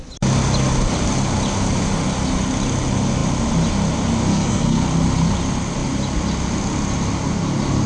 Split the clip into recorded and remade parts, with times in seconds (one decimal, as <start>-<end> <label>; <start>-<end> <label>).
0.0-4.3 recorded; 4.3-4.8 remade; 4.8-7.9 recorded